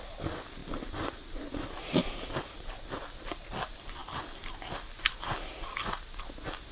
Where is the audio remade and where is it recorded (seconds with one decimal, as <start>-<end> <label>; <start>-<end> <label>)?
0.0-6.7 recorded